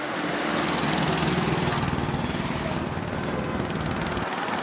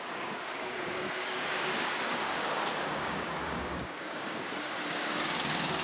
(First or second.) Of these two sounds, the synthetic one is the second